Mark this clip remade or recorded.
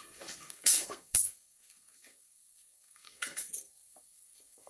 remade